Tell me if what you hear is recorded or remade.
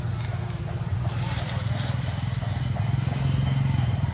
recorded